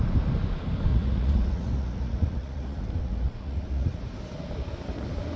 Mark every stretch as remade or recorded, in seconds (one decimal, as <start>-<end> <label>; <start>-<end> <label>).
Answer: 0.0-0.9 recorded; 0.9-4.0 remade; 4.0-5.4 recorded